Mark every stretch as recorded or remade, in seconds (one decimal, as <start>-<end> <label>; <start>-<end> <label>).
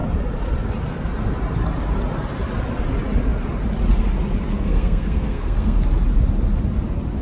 0.0-4.5 recorded; 4.5-5.8 remade; 5.8-7.2 recorded